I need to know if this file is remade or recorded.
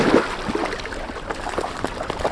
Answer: recorded